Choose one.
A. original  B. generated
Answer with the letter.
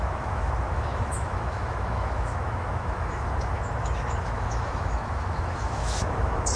B